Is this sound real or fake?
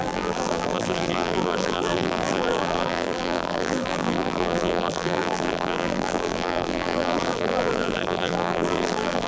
fake